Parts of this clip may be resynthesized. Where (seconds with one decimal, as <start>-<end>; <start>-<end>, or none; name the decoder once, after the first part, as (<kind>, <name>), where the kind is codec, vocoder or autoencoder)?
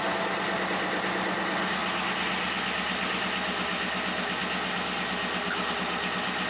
none